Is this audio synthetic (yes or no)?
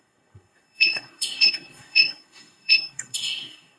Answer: yes